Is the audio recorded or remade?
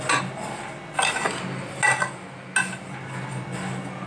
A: recorded